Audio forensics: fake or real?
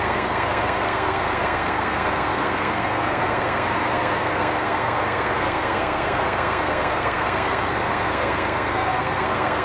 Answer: fake